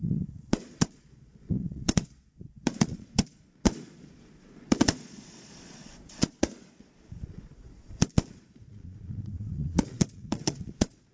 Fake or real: fake